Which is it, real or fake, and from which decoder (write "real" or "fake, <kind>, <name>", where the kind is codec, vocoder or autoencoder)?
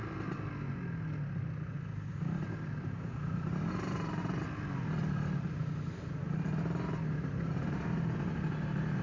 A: real